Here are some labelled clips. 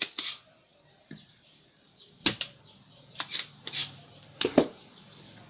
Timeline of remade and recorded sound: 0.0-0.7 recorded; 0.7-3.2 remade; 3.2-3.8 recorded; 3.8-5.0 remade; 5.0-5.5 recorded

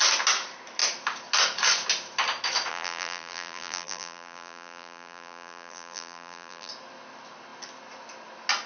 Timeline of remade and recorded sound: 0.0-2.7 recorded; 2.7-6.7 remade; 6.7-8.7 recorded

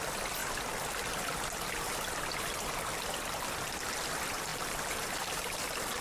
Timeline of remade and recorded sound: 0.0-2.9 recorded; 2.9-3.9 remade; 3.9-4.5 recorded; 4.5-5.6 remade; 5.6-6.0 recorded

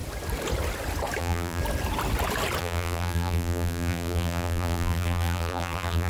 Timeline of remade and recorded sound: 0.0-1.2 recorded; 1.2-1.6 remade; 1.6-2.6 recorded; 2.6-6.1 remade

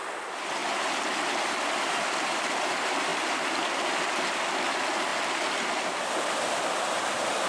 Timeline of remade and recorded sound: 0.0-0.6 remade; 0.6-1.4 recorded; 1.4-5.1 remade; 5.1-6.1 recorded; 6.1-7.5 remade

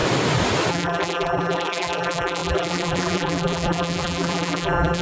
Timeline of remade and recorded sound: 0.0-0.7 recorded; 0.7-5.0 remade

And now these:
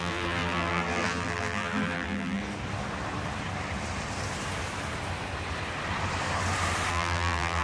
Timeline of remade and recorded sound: 0.0-2.4 remade; 2.4-6.9 recorded; 6.9-7.6 remade